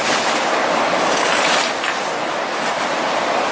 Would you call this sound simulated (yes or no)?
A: no